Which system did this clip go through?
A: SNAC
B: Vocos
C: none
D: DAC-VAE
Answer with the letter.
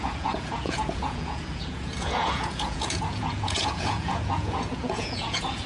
B